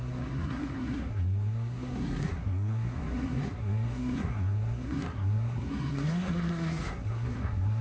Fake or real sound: fake